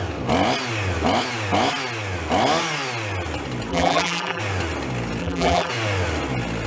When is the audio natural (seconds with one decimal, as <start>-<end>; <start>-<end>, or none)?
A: 0.0-3.7; 4.4-5.2; 5.7-6.7